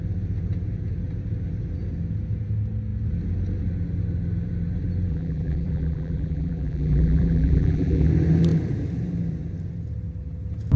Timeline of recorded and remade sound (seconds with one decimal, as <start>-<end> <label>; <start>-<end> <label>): 0.0-5.1 recorded; 5.1-8.1 remade; 8.1-10.8 recorded